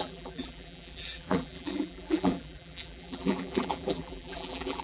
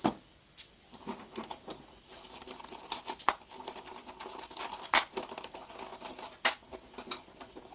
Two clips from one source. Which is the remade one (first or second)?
first